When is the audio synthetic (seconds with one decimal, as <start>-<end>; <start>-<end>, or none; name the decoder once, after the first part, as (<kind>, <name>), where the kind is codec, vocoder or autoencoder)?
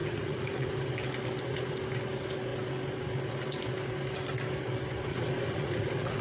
0.0-0.7 (vocoder, Vocos); 5.1-6.2